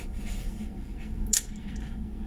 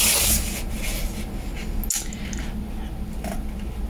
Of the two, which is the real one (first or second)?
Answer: second